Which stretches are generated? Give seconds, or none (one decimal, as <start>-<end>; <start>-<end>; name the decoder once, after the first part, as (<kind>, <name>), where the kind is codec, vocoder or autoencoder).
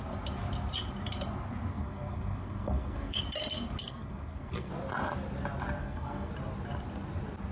1.7-3.2 (codec, SNAC); 3.8-4.7; 5.8-6.3